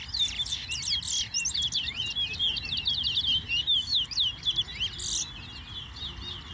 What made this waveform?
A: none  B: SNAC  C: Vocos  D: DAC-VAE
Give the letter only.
A